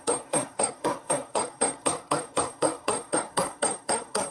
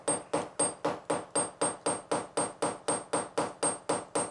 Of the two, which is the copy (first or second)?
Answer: first